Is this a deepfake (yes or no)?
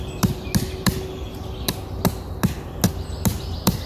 no